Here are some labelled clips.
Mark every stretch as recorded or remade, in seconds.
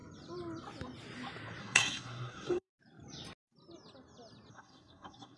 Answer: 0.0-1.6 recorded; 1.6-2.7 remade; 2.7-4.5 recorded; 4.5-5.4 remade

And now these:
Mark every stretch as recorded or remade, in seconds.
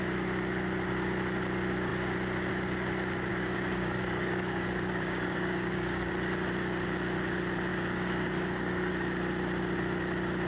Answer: 0.0-3.3 recorded; 3.3-6.1 remade; 6.1-7.7 recorded; 7.7-8.9 remade; 8.9-10.5 recorded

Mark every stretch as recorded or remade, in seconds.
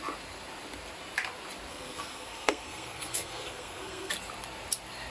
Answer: 0.0-1.7 recorded; 1.7-4.1 remade; 4.1-5.1 recorded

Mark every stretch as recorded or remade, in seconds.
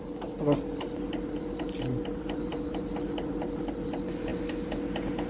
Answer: 0.0-5.3 recorded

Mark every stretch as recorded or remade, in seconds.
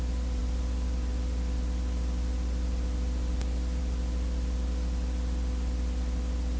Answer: 0.0-6.6 recorded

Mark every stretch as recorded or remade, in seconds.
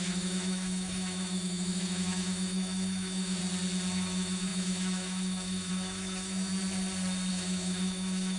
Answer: 0.0-3.4 remade; 3.4-3.9 recorded; 3.9-6.5 remade; 6.5-7.3 recorded; 7.3-8.4 remade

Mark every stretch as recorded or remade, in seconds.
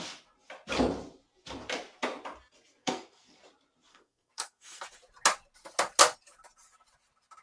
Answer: 0.0-2.8 recorded; 2.8-3.4 remade; 3.4-3.9 recorded; 3.9-4.8 remade; 4.8-7.4 recorded